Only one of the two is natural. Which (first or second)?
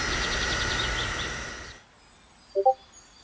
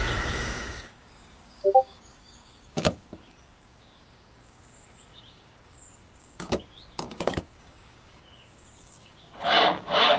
first